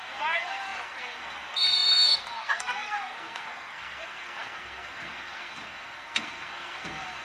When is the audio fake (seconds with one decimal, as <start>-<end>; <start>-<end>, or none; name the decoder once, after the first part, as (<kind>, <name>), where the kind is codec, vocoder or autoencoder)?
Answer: 0.0-7.2 (codec, SNAC)